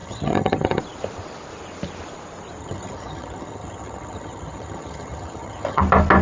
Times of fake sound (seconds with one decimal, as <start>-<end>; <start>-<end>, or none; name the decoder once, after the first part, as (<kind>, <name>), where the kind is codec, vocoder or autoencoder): 0.0-0.8 (vocoder, HiFi-GAN); 2.6-5.8